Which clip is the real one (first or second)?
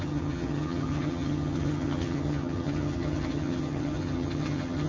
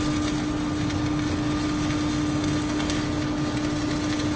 second